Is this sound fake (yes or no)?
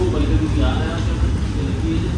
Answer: no